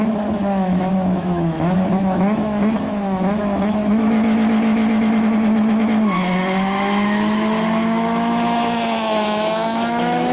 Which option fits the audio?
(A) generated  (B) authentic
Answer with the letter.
A